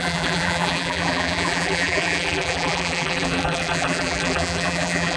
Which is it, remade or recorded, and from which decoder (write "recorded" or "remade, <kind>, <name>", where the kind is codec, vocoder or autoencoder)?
remade, vocoder, BigVGAN v2